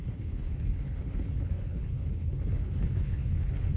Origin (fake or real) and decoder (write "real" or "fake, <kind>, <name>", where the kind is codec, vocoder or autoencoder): fake, codec, HILCodec